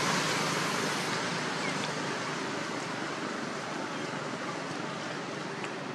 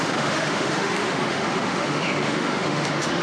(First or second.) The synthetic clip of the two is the second